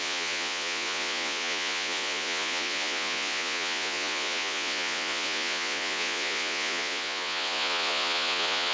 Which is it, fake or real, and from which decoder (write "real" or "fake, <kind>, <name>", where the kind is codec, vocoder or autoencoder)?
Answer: fake, vocoder, Vocos